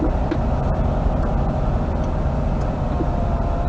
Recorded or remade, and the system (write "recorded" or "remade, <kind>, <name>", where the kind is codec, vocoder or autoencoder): recorded